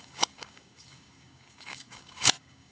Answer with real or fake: fake